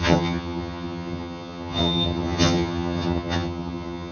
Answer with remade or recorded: remade